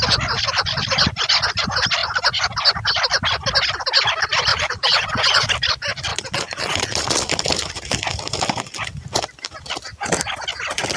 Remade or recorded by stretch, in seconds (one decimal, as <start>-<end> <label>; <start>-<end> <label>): 0.0-4.5 recorded; 4.5-5.5 remade; 5.5-6.1 recorded; 6.1-7.3 remade; 7.3-11.0 recorded